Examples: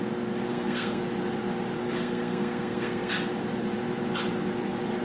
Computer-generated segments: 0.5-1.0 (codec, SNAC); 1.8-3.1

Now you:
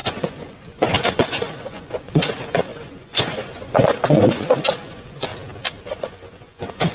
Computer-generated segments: 0.0-5.3 (vocoder, Vocos); 5.9-6.9